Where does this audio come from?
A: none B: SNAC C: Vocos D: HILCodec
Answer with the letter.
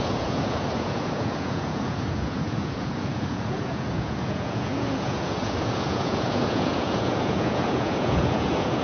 C